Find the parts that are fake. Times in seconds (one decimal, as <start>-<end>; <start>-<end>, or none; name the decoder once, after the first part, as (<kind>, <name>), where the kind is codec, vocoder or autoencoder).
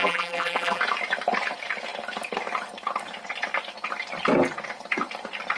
0.0-0.8 (vocoder, BigVGAN v2)